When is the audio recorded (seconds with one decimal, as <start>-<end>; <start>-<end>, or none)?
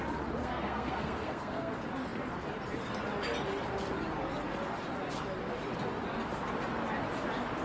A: 0.0-0.4; 1.7-7.6